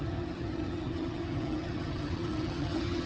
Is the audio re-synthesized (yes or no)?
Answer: yes